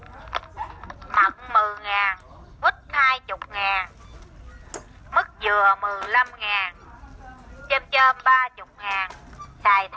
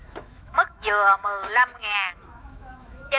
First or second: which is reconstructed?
second